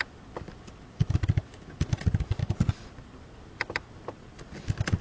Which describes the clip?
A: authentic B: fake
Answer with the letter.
A